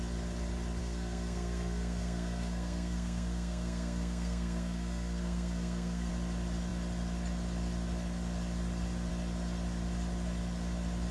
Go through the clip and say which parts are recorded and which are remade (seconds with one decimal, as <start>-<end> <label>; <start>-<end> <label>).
0.0-0.8 recorded; 0.8-6.1 remade; 6.1-11.1 recorded